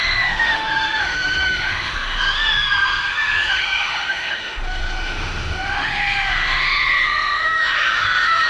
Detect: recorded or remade remade